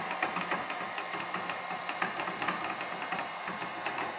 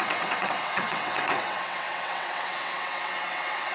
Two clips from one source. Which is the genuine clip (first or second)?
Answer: first